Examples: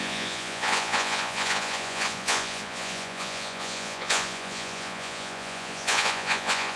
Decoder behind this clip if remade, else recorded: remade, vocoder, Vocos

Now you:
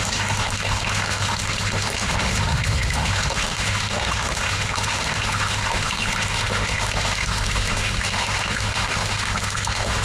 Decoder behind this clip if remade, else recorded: remade, autoencoder, DAC-VAE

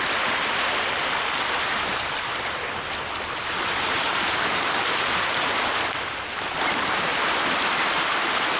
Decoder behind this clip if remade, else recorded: recorded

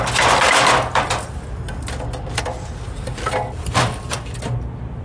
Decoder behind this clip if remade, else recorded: recorded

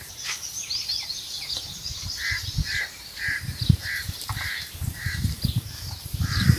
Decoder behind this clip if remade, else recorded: remade, vocoder, BigVGAN v2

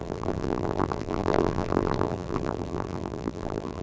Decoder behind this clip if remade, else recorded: remade, vocoder, BigVGAN v2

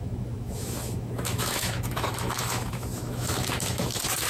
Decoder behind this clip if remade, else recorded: remade, autoencoder, DAC-VAE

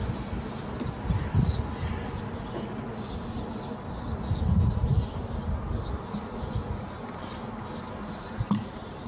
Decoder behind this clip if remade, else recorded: recorded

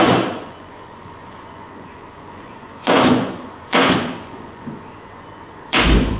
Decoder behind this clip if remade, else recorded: remade, vocoder, Vocos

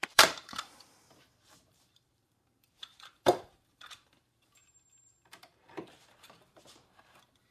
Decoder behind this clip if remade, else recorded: remade, vocoder, BigVGAN v2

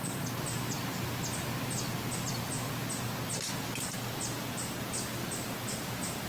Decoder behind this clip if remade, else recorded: recorded